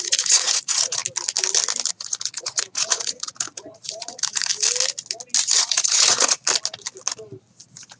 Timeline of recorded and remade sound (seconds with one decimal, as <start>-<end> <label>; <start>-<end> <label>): 0.0-1.0 remade; 1.0-1.9 recorded; 1.9-4.5 remade; 4.5-5.6 recorded; 5.6-6.4 remade; 6.4-8.0 recorded